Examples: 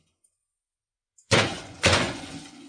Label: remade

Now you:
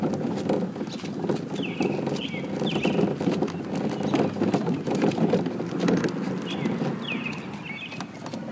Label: recorded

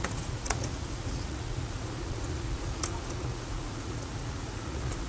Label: remade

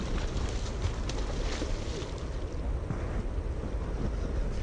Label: recorded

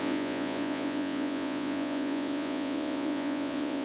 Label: remade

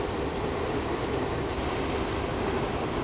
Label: recorded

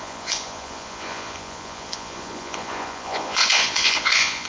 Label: remade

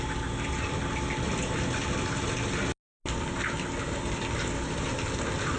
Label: recorded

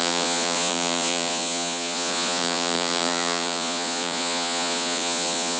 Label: remade